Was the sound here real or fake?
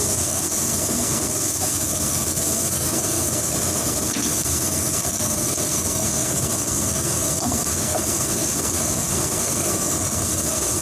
fake